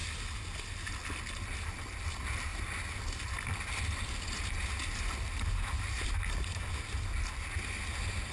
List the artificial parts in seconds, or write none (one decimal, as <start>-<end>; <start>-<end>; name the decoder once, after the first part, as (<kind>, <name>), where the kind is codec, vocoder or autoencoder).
none